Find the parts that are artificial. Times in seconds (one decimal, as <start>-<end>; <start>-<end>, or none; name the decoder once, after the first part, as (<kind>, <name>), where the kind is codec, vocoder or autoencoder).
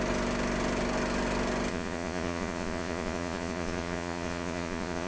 1.7-5.1 (vocoder, Vocos)